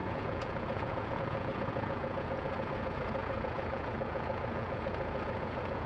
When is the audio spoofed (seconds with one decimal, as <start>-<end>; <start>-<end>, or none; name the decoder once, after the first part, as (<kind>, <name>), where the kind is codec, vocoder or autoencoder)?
0.0-5.9 (vocoder, Vocos)